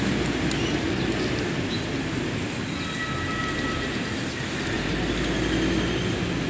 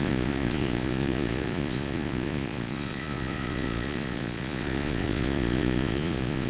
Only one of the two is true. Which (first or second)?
first